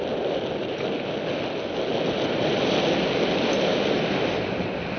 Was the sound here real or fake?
real